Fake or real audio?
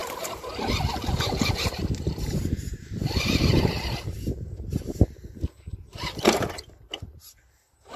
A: fake